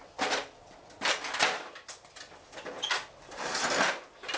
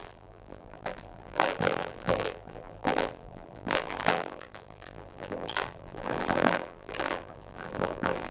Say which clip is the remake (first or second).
second